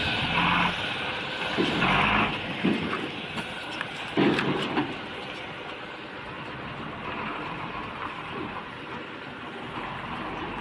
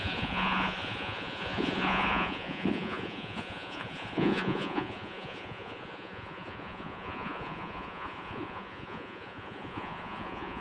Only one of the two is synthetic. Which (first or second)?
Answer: second